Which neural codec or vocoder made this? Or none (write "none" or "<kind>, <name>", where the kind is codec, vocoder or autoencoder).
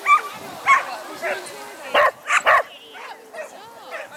none